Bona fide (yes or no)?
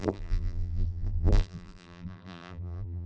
no